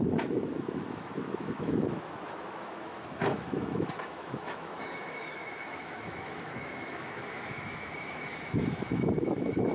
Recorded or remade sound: remade